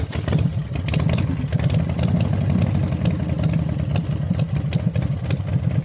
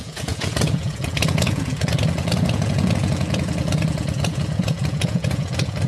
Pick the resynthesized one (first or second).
second